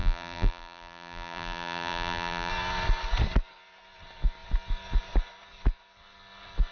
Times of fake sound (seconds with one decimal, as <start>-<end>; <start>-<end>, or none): 0.0-2.5